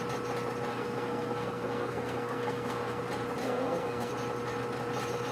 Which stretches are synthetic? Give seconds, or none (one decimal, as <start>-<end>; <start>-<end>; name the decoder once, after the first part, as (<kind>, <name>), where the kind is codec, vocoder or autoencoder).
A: 0.7-3.0 (codec, SNAC); 3.4-4.1